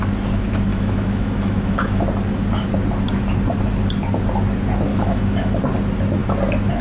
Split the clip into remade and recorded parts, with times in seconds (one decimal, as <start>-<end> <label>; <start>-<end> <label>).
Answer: 0.0-0.7 recorded; 0.7-2.0 remade; 2.0-4.9 recorded; 4.9-5.6 remade; 5.6-6.8 recorded